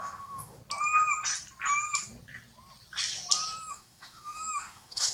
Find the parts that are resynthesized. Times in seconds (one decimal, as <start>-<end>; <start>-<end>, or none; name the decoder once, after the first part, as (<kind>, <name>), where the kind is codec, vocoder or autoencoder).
0.0-0.6 (autoencoder, DAC-VAE); 3.7-5.1